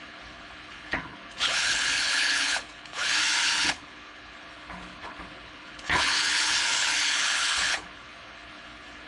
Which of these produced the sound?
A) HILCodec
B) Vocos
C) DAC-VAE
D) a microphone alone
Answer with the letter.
A